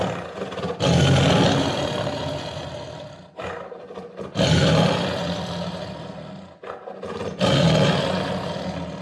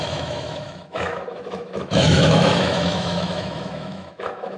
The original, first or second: first